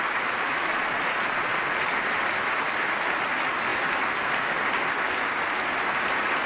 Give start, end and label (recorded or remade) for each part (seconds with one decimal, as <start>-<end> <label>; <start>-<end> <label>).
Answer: 0.0-0.7 recorded; 0.7-1.6 remade; 1.6-6.5 recorded